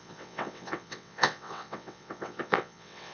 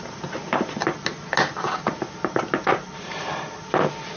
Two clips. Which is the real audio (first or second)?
second